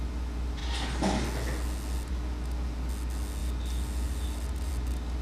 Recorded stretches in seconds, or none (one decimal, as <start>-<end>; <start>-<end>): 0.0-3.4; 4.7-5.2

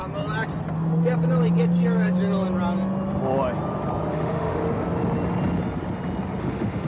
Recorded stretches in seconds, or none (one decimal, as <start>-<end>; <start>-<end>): 0.0-4.1; 4.6-6.4

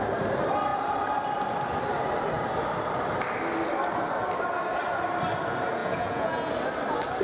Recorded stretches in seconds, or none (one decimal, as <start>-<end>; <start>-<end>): 0.0-5.8; 6.5-7.2

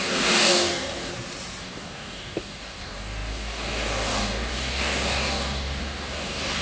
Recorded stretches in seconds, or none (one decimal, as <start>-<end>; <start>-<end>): 1.1-1.6

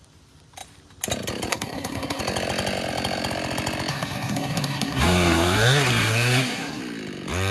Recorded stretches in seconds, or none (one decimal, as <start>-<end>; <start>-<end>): 0.0-1.5; 2.2-3.9; 6.8-7.5

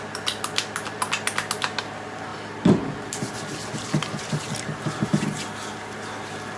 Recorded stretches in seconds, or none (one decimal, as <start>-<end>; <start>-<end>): 0.0-6.6

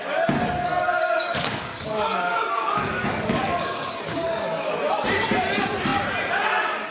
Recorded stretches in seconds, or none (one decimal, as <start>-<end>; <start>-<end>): 0.0-0.7; 4.8-6.9